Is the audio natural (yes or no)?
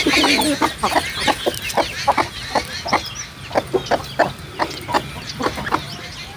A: yes